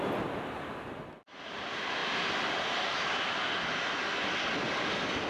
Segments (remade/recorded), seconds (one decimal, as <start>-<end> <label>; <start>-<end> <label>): 0.0-5.3 recorded